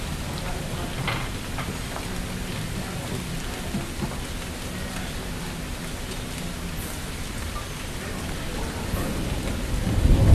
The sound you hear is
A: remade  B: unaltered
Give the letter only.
B